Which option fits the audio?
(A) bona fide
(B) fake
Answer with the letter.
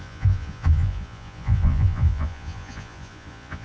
B